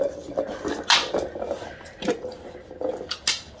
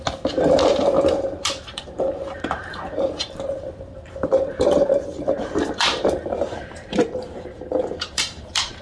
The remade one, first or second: second